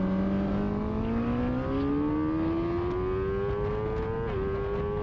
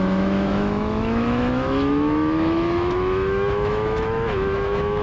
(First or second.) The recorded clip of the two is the first